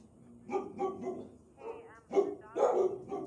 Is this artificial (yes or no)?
no